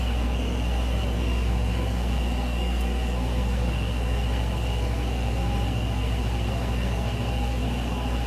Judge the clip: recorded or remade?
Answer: remade